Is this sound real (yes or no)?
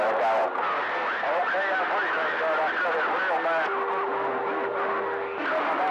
yes